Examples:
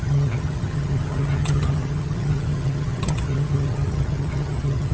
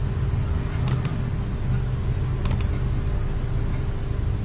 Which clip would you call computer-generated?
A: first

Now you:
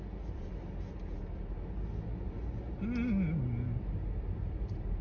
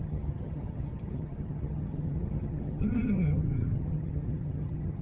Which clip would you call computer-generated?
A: second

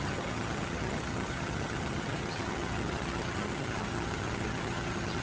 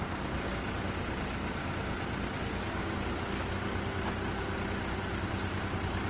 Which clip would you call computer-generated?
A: first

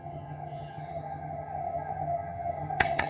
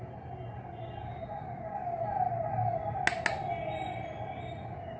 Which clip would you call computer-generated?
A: first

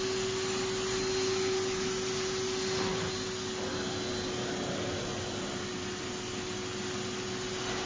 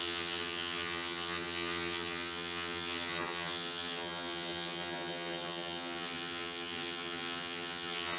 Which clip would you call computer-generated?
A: second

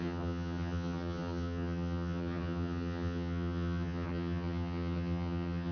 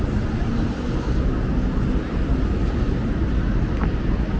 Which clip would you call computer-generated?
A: first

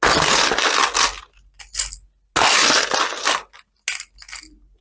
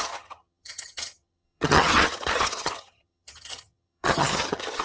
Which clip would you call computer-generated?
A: second